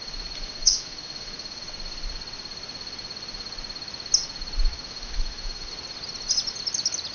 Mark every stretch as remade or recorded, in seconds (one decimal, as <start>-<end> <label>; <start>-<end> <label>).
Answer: 0.0-0.6 recorded; 0.6-1.6 remade; 1.6-4.7 recorded; 4.7-5.7 remade; 5.7-7.1 recorded